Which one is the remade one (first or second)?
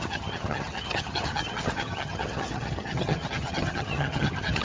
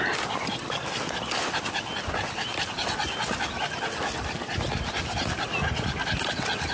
first